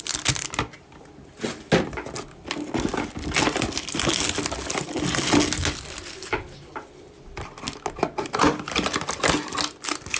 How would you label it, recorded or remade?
recorded